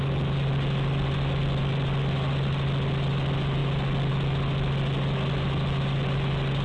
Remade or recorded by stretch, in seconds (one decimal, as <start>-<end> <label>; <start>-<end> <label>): 0.0-6.6 recorded